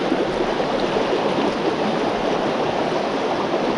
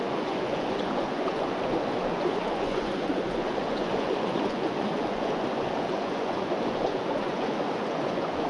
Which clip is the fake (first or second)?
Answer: second